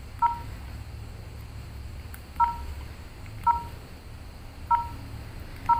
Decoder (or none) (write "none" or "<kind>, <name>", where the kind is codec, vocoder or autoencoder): none